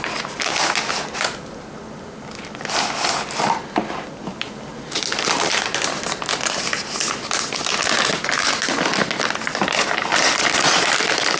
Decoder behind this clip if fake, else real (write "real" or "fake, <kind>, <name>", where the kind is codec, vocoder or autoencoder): real